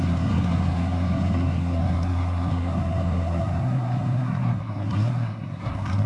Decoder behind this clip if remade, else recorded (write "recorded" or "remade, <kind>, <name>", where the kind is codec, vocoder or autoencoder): remade, codec, SNAC